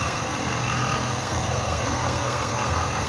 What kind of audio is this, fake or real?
fake